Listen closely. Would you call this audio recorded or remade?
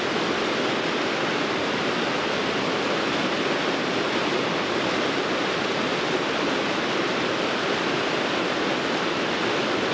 recorded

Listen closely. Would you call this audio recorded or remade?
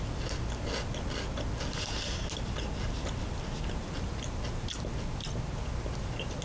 recorded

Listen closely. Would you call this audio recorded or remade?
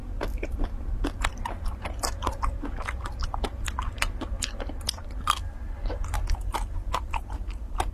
recorded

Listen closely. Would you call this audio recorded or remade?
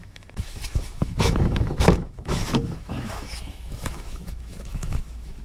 remade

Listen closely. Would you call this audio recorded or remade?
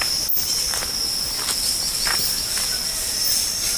recorded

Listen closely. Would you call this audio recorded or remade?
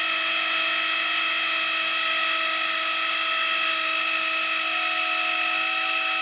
recorded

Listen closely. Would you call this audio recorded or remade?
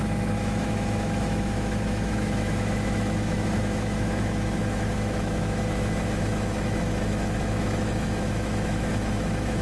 remade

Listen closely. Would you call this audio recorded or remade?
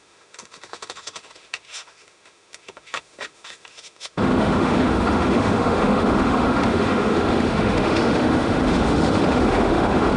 remade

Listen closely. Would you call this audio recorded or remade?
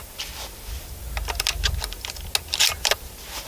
recorded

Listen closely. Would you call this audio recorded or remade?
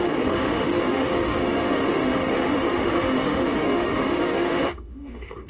remade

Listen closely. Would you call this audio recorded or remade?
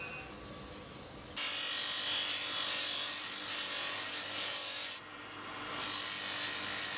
recorded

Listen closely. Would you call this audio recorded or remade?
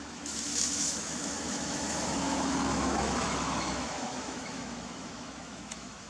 remade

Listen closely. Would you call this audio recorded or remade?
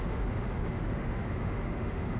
remade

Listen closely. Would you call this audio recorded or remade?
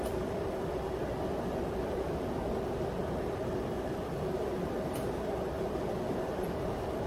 recorded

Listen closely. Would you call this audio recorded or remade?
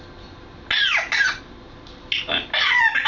recorded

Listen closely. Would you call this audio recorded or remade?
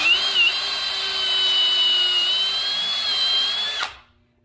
recorded